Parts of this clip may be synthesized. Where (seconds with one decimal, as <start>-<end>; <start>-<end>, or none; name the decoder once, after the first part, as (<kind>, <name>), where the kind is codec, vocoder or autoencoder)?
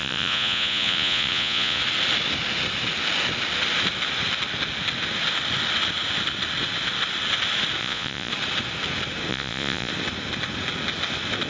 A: 0.0-1.8 (vocoder, Vocos); 7.8-8.3; 9.3-9.9